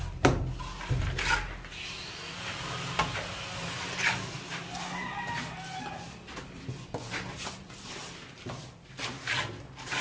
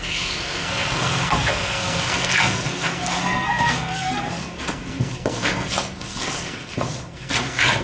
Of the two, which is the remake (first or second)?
second